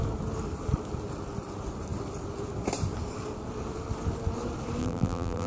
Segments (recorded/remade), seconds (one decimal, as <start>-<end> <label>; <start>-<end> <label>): 0.0-4.8 recorded; 4.8-5.5 remade